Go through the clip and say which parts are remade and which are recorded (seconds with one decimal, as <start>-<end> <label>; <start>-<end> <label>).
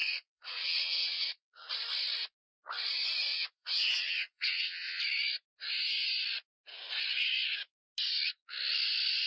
0.0-1.7 remade; 1.7-3.3 recorded; 3.3-5.0 remade; 5.0-9.3 recorded